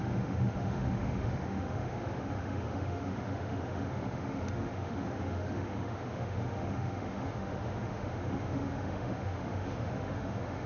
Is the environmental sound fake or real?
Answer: fake